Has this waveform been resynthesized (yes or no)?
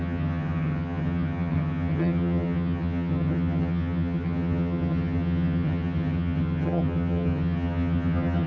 yes